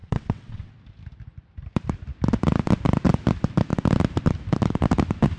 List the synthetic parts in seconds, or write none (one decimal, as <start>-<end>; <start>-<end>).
0.0-0.7